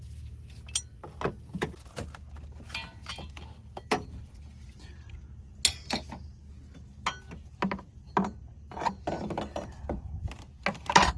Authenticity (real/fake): real